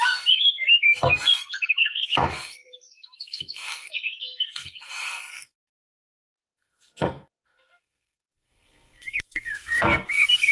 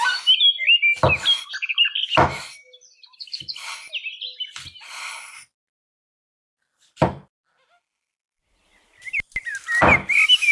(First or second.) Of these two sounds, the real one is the second